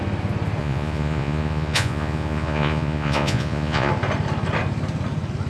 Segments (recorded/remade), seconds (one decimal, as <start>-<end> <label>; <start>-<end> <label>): 0.0-0.6 recorded; 0.6-3.9 remade; 3.9-5.5 recorded